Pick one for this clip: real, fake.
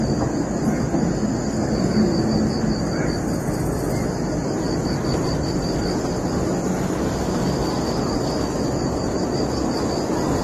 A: real